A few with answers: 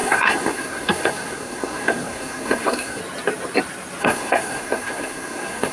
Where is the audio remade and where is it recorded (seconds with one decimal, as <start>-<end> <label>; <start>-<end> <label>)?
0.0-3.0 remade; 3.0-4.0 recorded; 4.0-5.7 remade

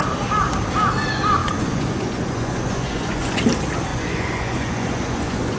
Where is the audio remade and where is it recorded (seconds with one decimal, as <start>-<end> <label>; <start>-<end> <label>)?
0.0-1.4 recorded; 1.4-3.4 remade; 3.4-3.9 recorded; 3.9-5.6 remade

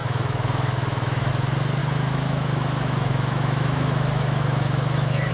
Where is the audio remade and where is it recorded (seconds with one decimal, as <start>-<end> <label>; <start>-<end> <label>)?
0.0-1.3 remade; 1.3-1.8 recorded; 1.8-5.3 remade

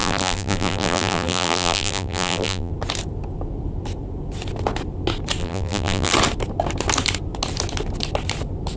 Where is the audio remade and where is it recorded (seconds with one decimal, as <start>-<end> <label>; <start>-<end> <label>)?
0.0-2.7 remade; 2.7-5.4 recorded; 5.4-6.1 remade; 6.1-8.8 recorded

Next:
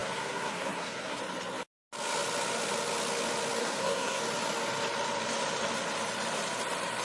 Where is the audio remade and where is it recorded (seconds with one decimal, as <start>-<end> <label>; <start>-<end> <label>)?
0.0-1.2 remade; 1.2-3.6 recorded; 3.6-4.2 remade; 4.2-7.0 recorded

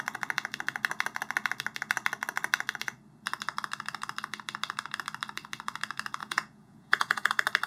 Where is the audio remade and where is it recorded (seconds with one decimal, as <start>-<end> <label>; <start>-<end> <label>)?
0.0-6.2 recorded; 6.2-7.3 remade; 7.3-7.7 recorded